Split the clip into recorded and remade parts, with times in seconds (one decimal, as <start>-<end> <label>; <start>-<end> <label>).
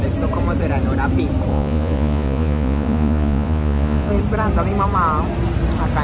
0.0-1.5 recorded; 1.5-4.1 remade; 4.1-6.0 recorded